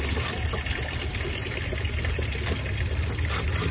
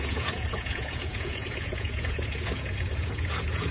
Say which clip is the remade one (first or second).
second